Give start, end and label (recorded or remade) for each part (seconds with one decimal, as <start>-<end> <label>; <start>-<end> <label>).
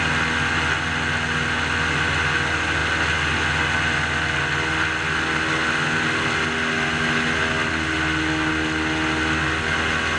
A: 0.0-10.2 recorded